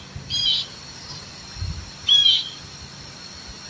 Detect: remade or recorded recorded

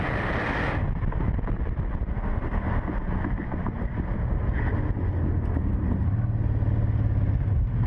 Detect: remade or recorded recorded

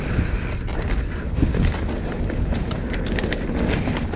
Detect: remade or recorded recorded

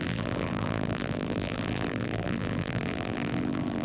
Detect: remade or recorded remade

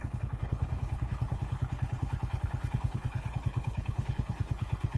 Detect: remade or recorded remade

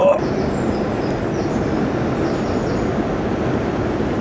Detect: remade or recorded recorded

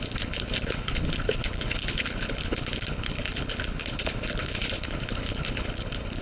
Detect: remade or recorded remade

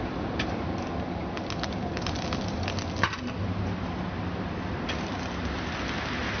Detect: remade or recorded recorded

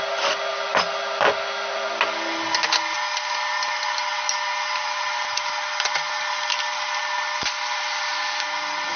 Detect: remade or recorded recorded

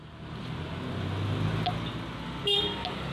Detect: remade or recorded recorded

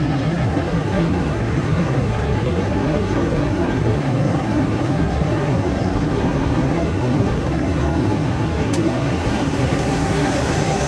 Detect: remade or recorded remade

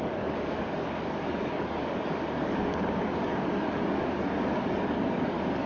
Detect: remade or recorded remade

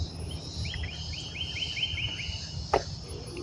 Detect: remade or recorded recorded